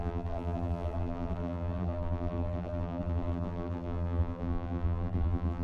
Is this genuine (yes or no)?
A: no